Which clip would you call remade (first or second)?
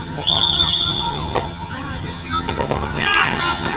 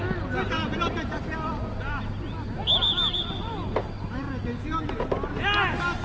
first